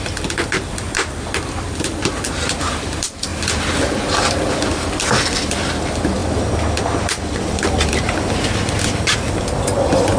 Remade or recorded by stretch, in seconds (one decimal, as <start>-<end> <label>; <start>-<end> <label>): 0.0-10.2 remade

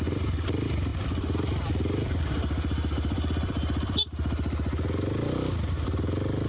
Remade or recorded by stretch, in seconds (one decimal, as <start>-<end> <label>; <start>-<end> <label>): 0.0-0.9 recorded; 0.9-4.0 remade; 4.0-6.5 recorded

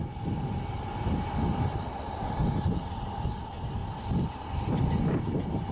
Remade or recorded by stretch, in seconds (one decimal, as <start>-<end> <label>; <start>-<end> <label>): 0.0-3.8 recorded; 3.8-4.6 remade; 4.6-5.7 recorded

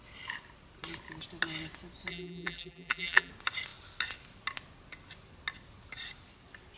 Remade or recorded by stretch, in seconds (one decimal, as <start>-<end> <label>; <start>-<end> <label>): 0.0-2.1 recorded; 2.1-3.3 remade; 3.3-6.8 recorded

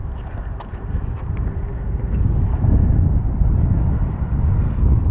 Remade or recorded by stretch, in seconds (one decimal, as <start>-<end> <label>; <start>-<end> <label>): 0.0-1.7 remade; 1.7-5.1 recorded

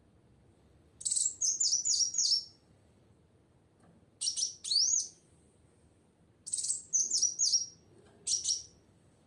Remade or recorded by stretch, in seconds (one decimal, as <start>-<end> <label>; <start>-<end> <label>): 0.0-2.2 recorded; 2.2-2.7 remade; 2.7-9.3 recorded